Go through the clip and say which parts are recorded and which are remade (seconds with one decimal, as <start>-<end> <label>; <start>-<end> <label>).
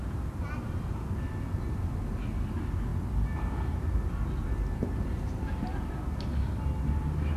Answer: 0.0-7.4 recorded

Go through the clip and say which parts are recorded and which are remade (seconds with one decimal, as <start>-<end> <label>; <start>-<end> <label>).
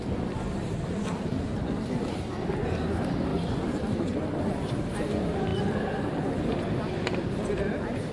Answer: 0.0-3.3 recorded; 3.3-4.7 remade; 4.7-5.5 recorded; 5.5-8.1 remade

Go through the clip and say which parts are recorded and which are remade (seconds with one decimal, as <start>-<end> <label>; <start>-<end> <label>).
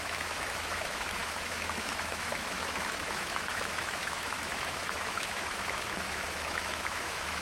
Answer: 0.0-7.4 remade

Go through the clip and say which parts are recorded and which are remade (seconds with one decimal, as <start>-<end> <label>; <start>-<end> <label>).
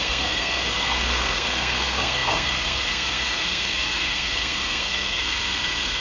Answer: 0.0-6.0 remade